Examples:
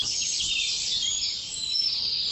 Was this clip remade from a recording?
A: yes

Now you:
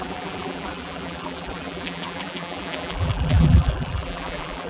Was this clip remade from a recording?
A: yes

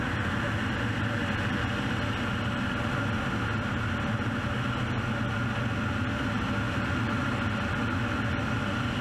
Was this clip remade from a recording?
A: no